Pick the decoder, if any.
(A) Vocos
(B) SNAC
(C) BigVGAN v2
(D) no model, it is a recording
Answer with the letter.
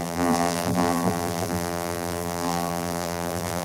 C